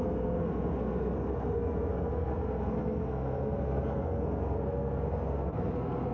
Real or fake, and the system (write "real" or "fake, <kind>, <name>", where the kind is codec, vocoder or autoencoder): fake, codec, SNAC